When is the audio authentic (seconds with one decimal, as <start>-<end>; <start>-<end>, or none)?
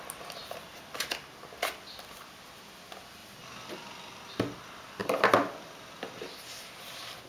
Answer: 0.0-0.4; 1.0-3.2; 4.3-5.0; 6.5-7.3